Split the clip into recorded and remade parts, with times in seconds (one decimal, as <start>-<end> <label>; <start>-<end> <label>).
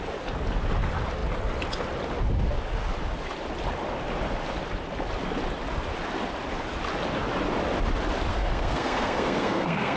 0.0-8.3 recorded; 8.3-10.0 remade